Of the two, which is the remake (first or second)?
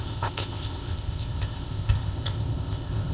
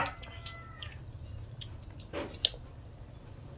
first